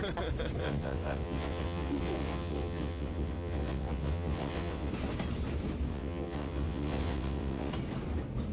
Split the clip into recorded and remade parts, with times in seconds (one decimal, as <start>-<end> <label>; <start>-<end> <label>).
0.0-0.6 recorded; 0.6-4.9 remade; 4.9-5.9 recorded; 5.9-7.7 remade; 7.7-8.5 recorded